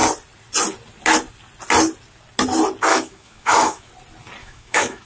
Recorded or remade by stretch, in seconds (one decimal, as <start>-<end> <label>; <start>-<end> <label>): 0.0-2.9 recorded; 2.9-3.9 remade; 3.9-4.4 recorded; 4.4-5.1 remade